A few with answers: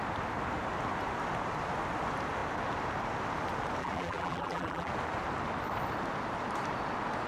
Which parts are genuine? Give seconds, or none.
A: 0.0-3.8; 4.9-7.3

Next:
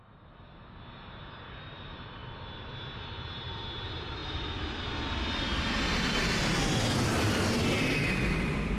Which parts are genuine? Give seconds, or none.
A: 0.0-8.8